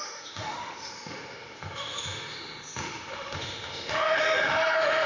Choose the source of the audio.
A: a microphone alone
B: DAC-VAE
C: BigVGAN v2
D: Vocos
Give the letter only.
B